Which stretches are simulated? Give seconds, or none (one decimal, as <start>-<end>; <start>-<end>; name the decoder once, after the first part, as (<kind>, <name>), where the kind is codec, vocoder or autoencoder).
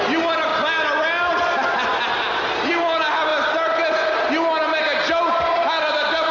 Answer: none